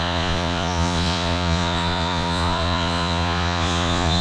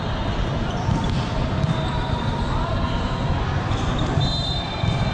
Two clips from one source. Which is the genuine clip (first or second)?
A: second